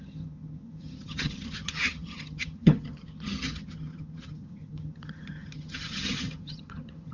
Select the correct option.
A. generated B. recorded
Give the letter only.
A